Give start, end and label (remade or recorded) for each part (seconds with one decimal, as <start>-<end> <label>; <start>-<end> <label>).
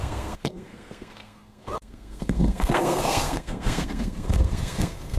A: 0.0-5.2 remade